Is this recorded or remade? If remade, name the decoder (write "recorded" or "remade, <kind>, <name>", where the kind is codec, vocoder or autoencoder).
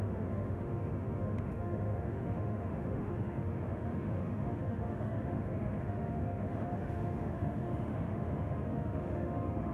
remade, autoencoder, DAC-VAE